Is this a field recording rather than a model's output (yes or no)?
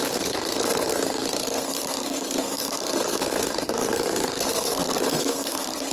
no